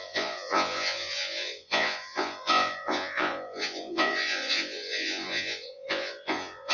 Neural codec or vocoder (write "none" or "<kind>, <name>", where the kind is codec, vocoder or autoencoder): vocoder, Vocos